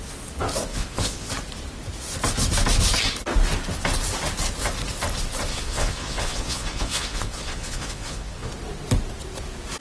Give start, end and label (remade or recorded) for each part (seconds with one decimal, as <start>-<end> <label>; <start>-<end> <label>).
0.0-0.7 recorded; 0.7-1.3 remade; 1.3-5.5 recorded; 5.5-8.5 remade; 8.5-9.8 recorded